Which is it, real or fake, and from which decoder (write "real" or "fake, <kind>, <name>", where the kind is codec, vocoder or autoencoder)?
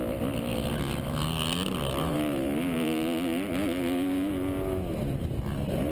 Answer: real